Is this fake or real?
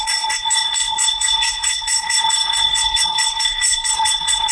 fake